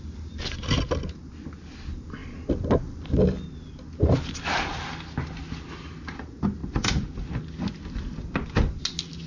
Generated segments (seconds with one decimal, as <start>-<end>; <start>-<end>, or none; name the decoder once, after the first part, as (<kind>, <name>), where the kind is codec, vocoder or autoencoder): none